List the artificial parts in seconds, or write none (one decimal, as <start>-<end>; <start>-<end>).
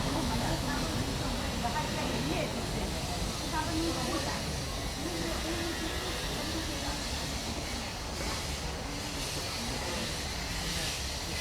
0.0-0.7